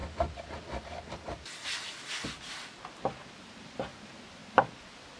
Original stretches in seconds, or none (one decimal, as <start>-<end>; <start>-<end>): 0.0-5.2

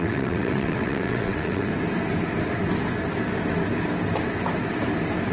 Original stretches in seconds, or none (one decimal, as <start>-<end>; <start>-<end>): 1.7-5.3

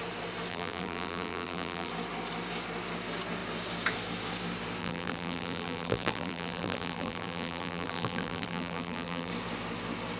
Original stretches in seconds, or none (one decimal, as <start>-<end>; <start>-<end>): 0.0-0.5; 1.9-4.8; 9.3-10.2

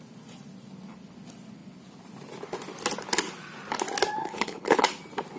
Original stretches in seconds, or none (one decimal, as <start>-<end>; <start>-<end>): 0.0-4.2; 4.9-5.4